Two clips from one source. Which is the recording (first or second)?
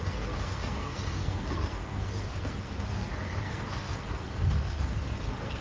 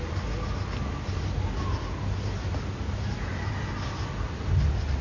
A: second